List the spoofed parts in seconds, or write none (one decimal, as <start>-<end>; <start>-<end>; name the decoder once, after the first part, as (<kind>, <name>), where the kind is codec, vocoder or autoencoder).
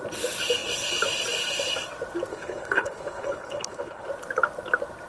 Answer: 2.3-4.1 (codec, HILCodec)